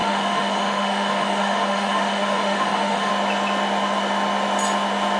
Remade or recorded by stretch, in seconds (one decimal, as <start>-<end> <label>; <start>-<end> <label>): 0.0-3.1 remade; 3.1-5.2 recorded